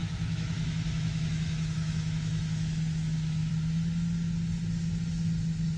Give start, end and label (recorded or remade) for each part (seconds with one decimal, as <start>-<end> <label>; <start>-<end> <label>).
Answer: 0.0-3.5 remade; 3.5-5.8 recorded